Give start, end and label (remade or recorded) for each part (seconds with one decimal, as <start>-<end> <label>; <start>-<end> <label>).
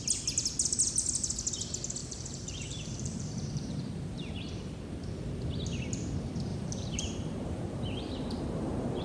0.0-2.0 recorded; 2.0-4.3 remade; 4.3-6.5 recorded; 6.5-9.0 remade